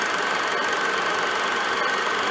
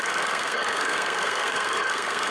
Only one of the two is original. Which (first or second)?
first